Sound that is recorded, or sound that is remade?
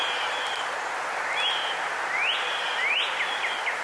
recorded